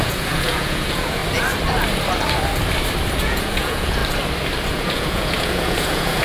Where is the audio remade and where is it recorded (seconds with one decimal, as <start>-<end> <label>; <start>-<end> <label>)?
0.0-1.2 remade; 1.2-3.2 recorded; 3.2-4.0 remade; 4.0-4.7 recorded; 4.7-6.2 remade